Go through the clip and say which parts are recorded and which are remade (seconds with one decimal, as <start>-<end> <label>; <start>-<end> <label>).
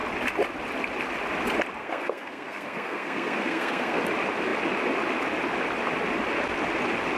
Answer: 0.0-1.8 recorded; 1.8-4.0 remade; 4.0-7.2 recorded